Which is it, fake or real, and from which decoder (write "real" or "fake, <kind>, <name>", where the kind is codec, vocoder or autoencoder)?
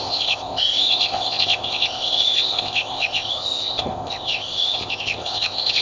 fake, codec, ZipCodec